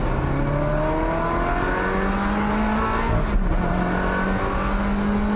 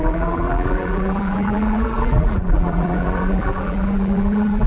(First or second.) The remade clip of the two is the second